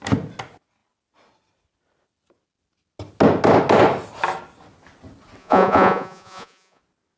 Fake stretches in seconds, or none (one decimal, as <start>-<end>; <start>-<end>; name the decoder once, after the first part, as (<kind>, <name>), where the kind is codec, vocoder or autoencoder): 5.4-6.8 (vocoder, Vocos)